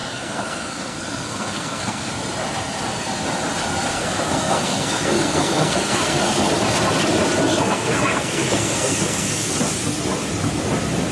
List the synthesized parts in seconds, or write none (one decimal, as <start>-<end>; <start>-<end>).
0.0-2.1; 3.9-6.5; 7.5-9.5